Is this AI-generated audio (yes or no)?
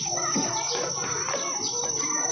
no